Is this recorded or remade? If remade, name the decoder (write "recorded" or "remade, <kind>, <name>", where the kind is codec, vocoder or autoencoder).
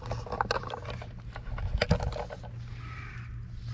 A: recorded